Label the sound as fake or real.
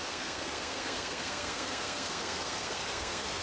fake